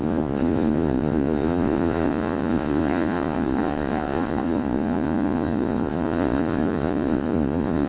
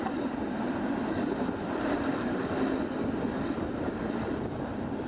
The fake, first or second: first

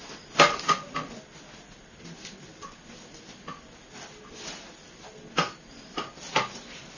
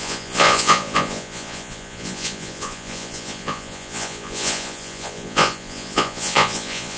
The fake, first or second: second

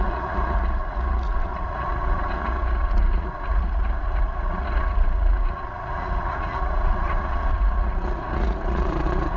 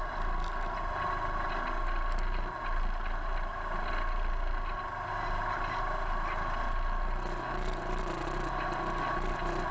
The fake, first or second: first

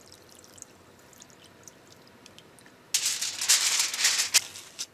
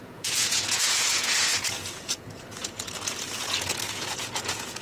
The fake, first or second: second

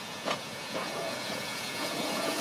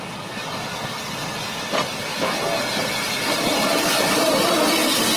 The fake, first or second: first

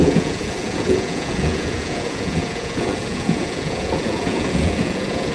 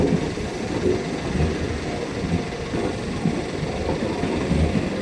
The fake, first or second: first